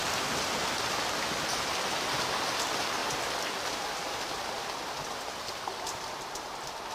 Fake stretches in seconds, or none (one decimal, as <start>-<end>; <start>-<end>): 0.0-0.6